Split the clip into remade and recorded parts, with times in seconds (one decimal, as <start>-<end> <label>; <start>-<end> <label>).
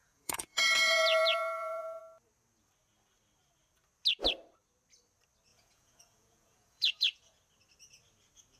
0.0-2.0 remade; 2.0-5.5 recorded; 5.5-7.4 remade; 7.4-8.6 recorded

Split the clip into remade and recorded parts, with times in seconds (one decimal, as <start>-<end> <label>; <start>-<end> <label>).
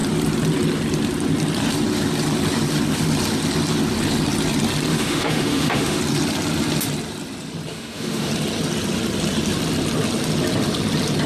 0.0-4.9 recorded; 4.9-6.0 remade; 6.0-7.7 recorded; 7.7-8.3 remade; 8.3-11.3 recorded